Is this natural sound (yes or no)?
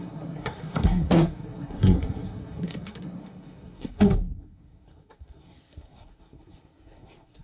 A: no